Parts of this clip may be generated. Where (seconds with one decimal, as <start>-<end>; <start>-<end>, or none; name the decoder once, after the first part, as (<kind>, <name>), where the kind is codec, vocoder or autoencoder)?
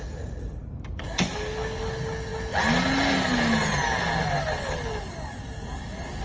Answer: none